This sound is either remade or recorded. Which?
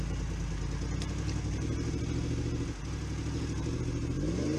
recorded